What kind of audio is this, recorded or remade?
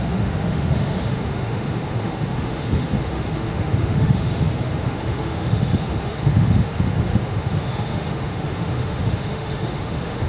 remade